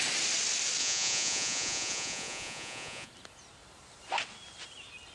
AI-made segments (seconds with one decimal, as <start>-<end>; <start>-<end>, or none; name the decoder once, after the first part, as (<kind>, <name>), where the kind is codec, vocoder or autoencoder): 0.8-3.1 (vocoder, Vocos)